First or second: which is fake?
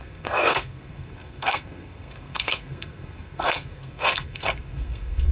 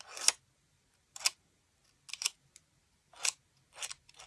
first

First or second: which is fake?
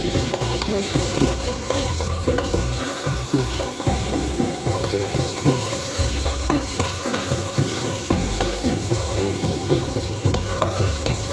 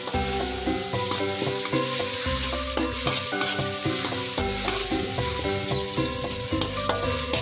first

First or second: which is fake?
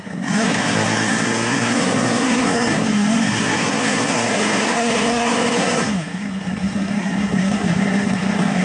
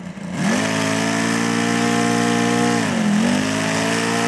first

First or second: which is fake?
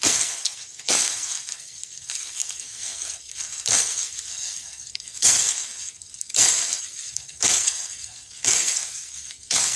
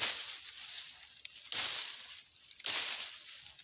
first